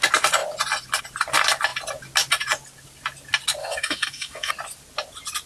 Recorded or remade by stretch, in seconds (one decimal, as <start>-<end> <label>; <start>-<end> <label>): 0.0-3.6 recorded; 3.6-4.5 remade; 4.5-5.5 recorded

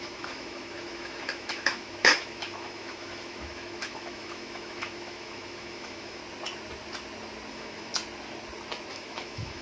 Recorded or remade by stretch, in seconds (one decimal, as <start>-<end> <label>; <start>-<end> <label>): 0.0-6.2 remade; 6.2-7.5 recorded; 7.5-7.9 remade; 7.9-8.9 recorded; 8.9-9.6 remade

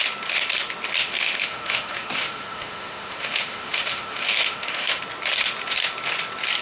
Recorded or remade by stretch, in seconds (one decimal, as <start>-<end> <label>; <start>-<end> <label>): 0.0-1.0 recorded; 1.0-5.0 remade; 5.0-6.6 recorded

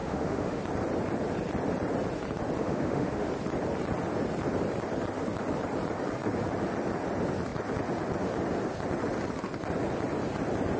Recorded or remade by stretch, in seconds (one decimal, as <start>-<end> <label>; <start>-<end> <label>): 0.0-0.6 remade; 0.6-2.6 recorded; 2.6-3.3 remade; 3.3-10.8 recorded

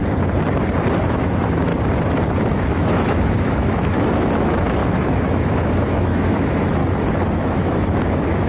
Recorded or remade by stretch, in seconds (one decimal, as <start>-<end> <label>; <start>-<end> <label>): 0.0-1.0 recorded; 1.0-1.7 remade; 1.7-2.5 recorded; 2.5-6.8 remade; 6.8-7.4 recorded; 7.4-8.5 remade

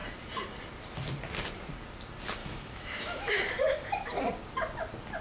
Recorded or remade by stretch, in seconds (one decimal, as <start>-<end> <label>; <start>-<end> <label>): 0.0-2.4 recorded; 2.4-4.2 remade; 4.2-5.2 recorded

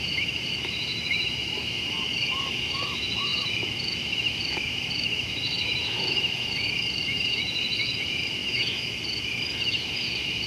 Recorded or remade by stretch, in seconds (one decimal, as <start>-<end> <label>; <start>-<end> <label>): 0.0-10.5 remade

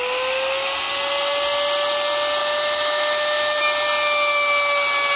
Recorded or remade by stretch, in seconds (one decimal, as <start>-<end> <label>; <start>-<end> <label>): 0.0-2.4 recorded; 2.4-3.6 remade; 3.6-5.2 recorded